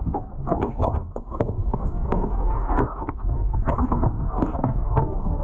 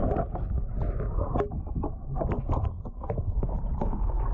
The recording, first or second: second